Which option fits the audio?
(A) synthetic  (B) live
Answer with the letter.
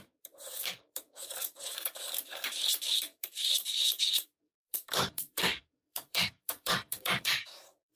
A